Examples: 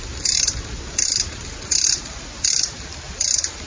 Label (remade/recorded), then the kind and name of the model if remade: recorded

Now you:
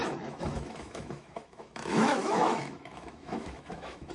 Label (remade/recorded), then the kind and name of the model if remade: remade, autoencoder, DAC-VAE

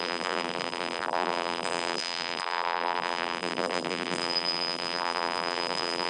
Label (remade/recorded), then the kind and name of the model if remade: remade, vocoder, BigVGAN v2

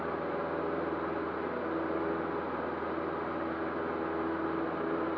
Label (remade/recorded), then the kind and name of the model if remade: recorded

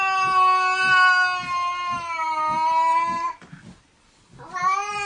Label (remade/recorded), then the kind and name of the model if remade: recorded